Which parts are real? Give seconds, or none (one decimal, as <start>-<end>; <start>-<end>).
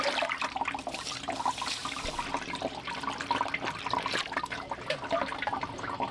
0.0-6.1